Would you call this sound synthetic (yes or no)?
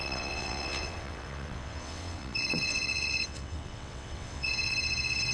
yes